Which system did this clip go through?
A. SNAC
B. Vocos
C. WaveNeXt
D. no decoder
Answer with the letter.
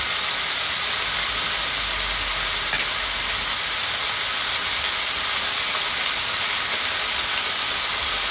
D